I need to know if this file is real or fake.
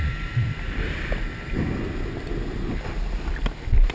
real